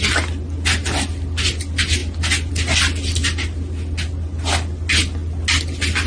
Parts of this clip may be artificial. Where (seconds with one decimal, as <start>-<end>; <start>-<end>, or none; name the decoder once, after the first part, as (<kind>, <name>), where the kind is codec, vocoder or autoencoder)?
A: none